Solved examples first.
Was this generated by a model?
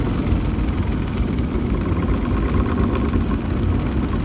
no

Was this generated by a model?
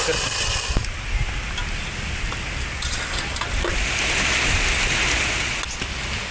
no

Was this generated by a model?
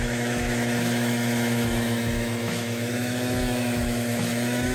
yes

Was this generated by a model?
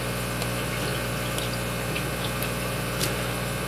no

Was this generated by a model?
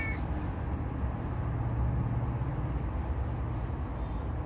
no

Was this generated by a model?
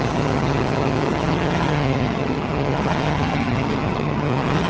yes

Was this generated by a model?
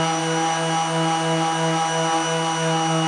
no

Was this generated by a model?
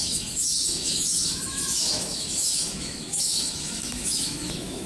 yes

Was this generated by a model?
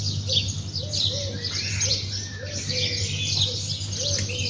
no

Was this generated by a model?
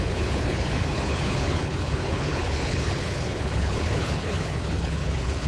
yes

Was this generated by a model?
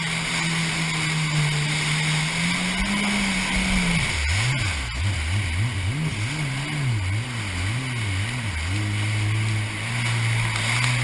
no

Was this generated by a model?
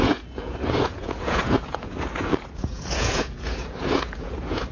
yes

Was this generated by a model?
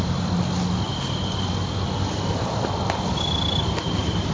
no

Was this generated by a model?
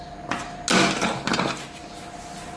no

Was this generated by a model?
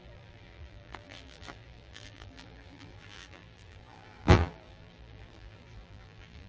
yes